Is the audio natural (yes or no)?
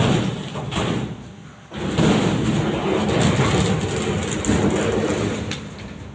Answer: yes